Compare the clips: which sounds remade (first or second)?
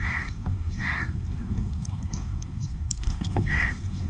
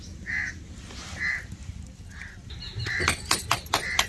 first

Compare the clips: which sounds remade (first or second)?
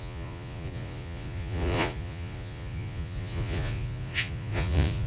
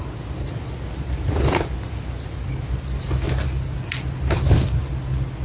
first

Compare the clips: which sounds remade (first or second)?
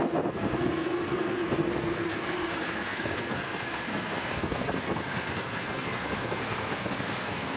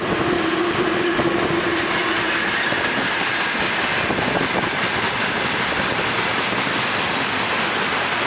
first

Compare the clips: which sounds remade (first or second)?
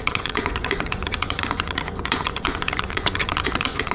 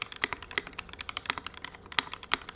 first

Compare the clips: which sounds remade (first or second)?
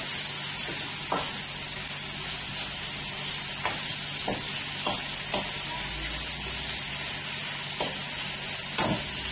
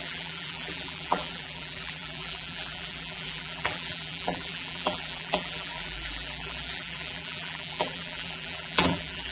second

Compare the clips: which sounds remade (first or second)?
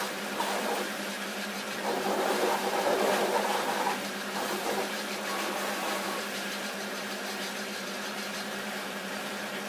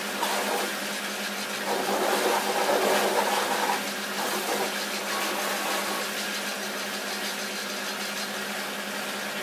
first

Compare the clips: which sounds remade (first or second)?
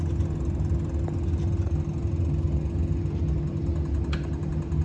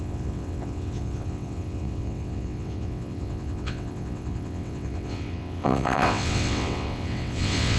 second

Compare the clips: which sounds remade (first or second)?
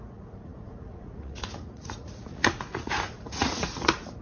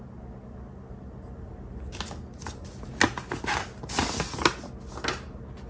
first